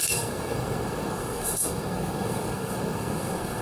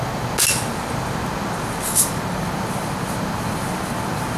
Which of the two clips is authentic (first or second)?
second